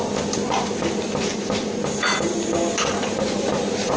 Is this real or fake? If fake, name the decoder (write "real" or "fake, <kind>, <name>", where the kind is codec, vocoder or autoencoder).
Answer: real